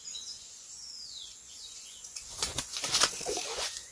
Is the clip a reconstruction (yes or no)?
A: yes